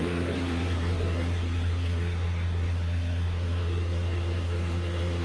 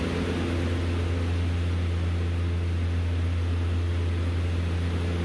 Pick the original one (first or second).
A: second